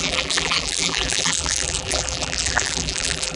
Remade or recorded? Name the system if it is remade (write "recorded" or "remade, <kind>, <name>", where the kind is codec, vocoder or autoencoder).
remade, vocoder, BigVGAN v2